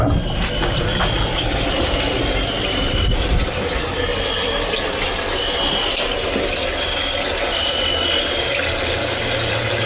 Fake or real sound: real